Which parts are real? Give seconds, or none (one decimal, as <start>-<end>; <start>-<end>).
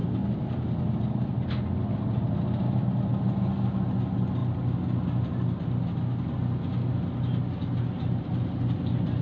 0.0-9.2